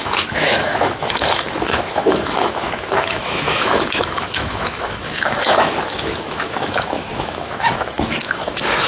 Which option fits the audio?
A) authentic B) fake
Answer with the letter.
B